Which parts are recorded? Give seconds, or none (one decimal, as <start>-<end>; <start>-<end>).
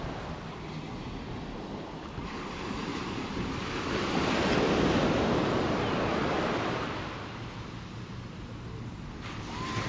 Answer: 0.0-2.9; 3.9-9.9